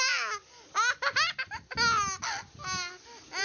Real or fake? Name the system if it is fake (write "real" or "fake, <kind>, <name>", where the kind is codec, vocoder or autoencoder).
real